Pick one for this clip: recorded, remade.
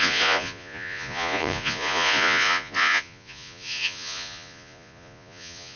remade